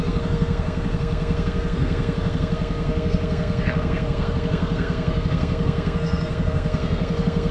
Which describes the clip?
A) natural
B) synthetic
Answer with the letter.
B